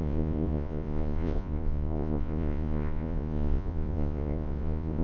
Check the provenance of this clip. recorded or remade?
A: remade